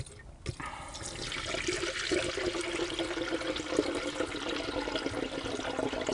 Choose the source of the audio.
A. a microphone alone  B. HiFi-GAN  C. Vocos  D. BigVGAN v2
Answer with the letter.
A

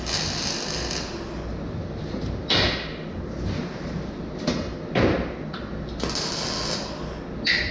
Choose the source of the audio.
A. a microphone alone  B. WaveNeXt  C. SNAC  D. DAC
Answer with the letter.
A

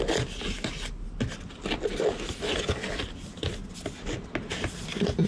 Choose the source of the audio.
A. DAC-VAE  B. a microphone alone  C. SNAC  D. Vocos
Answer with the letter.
B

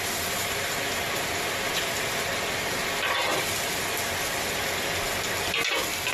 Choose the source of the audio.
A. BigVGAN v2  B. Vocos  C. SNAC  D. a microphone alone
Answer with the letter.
D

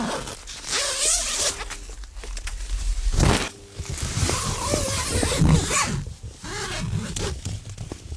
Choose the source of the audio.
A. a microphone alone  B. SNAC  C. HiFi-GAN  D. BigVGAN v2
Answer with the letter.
A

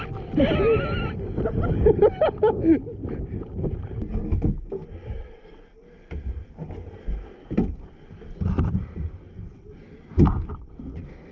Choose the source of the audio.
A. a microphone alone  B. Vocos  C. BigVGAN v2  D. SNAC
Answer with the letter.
A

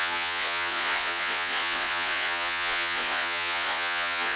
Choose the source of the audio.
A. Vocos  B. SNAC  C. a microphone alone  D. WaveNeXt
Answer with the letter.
A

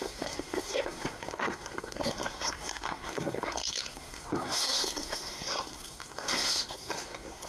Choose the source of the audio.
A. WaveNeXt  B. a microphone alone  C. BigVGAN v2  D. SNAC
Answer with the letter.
D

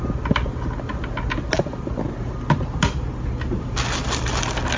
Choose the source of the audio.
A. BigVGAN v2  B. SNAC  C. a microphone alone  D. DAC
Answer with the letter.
C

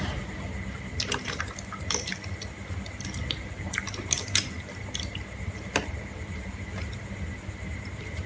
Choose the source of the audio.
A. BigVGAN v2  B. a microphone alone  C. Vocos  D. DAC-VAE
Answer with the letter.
A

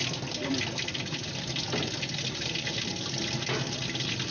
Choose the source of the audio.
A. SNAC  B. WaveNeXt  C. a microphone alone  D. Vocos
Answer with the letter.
C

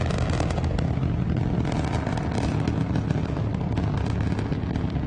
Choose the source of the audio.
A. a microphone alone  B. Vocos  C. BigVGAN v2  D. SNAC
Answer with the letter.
A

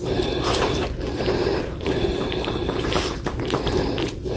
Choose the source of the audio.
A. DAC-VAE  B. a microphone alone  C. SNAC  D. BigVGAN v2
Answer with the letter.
D